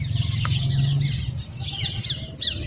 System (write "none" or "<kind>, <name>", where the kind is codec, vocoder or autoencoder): none